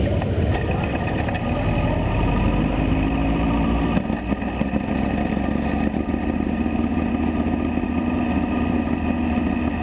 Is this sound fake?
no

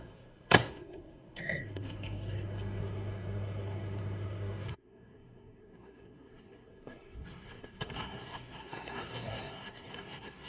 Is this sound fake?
yes